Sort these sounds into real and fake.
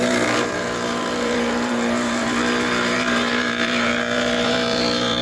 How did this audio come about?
fake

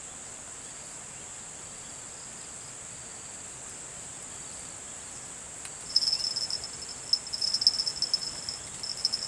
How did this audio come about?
real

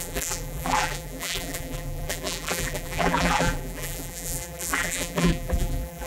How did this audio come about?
fake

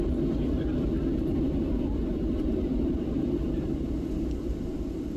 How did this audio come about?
fake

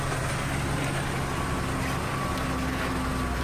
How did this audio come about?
real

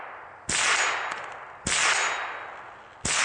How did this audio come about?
real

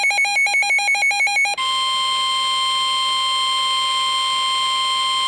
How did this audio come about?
real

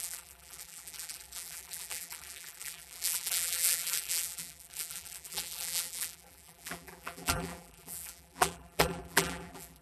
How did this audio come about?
fake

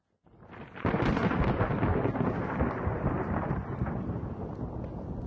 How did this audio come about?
real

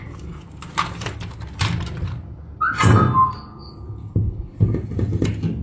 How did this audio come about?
real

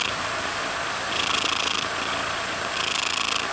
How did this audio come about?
real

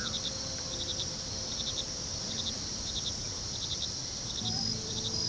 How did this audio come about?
fake